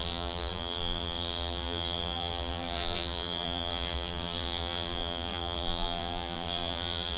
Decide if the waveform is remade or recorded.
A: remade